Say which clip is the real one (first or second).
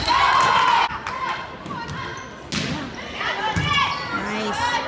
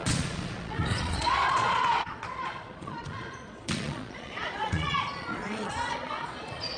first